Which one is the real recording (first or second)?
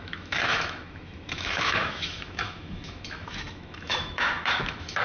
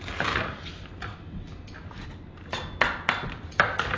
second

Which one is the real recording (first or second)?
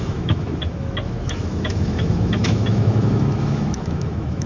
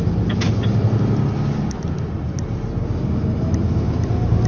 second